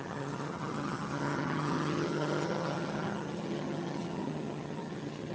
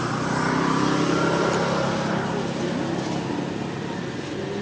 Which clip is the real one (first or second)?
second